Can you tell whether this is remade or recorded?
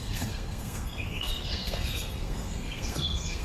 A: remade